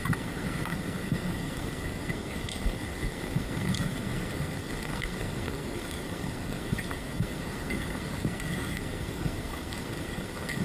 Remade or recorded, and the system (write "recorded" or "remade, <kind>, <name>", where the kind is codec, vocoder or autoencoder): remade, codec, SNAC